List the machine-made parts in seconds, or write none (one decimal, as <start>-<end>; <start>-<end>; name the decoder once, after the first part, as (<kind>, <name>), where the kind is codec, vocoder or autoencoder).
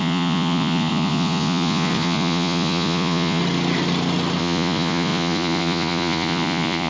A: 0.0-3.4 (vocoder, Vocos); 4.4-6.9